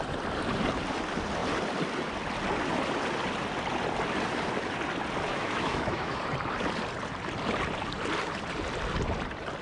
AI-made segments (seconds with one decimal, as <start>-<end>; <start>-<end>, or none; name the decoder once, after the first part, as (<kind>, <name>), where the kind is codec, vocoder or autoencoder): 5.3-6.2 (autoencoder, DAC-VAE)